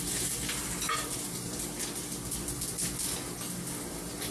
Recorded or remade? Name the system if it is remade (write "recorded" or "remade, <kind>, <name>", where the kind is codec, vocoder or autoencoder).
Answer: recorded